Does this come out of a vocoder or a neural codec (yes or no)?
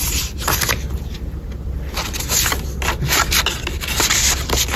no